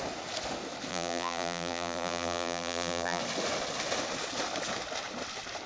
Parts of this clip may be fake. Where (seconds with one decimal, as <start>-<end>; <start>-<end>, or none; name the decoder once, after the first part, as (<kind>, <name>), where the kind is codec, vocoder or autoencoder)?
0.9-3.2 (vocoder, BigVGAN v2)